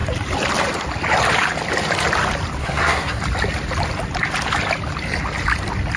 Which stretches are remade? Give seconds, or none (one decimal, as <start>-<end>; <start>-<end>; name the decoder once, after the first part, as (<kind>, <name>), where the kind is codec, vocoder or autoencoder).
2.6-3.2 (codec, SNAC)